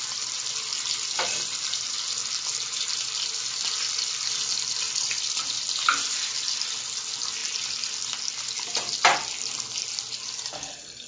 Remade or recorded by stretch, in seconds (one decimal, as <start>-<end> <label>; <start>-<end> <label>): 0.0-11.1 recorded